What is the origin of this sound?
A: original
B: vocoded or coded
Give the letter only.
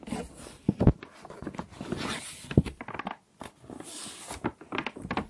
A